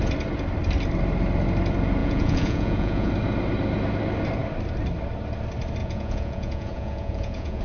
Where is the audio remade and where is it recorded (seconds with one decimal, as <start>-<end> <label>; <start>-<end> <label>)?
0.0-2.0 recorded; 2.0-3.1 remade; 3.1-5.8 recorded; 5.8-7.6 remade